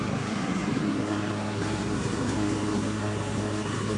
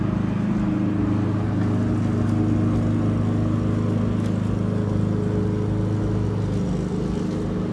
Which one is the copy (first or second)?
first